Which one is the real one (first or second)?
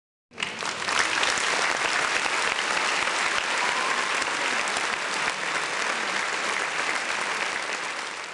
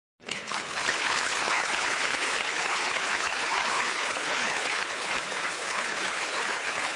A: first